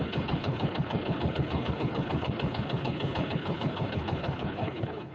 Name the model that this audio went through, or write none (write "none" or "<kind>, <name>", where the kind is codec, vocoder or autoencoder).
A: codec, HILCodec